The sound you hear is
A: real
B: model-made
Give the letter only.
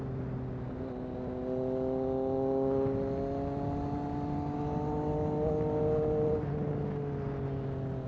A